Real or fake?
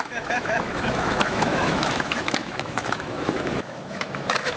fake